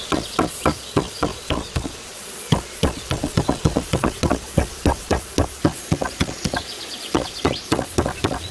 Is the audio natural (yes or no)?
no